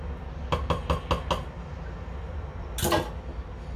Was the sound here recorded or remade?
recorded